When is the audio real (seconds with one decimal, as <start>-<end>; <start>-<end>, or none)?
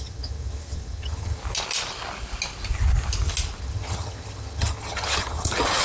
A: 1.4-3.6